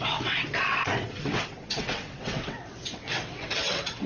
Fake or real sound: fake